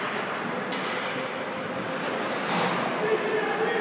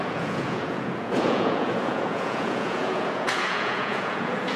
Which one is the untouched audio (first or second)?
first